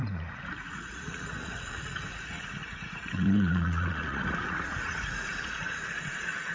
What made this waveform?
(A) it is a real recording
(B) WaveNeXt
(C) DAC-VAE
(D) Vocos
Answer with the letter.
D